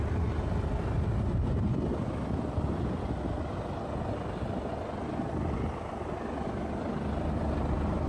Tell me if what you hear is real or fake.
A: real